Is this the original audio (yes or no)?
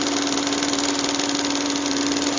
yes